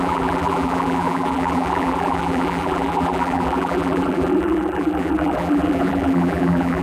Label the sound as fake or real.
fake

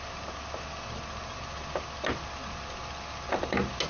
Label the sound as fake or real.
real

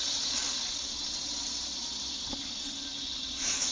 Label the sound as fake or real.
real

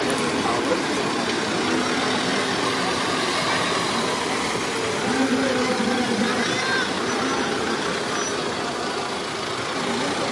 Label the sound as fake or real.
real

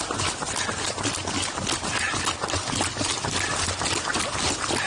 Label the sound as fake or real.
real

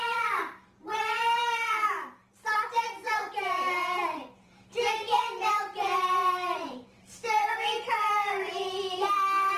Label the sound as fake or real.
fake